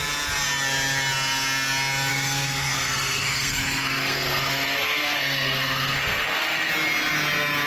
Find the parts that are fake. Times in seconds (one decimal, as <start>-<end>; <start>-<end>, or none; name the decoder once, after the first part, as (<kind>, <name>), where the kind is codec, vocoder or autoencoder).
2.1-6.7 (codec, SNAC)

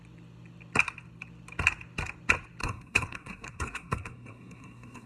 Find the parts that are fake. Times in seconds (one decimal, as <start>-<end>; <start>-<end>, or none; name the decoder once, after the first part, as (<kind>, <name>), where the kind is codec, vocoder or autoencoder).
2.6-5.1 (codec, SNAC)

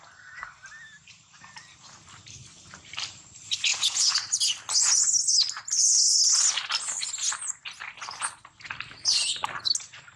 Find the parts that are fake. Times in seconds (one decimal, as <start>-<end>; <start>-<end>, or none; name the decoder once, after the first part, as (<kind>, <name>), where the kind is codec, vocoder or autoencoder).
3.7-4.2 (vocoder, Vocos)

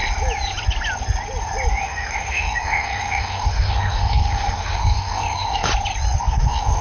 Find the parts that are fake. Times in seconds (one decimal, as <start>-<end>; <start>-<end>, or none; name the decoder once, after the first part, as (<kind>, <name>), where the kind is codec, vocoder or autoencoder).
1.7-5.7 (autoencoder, DAC-VAE); 6.3-6.8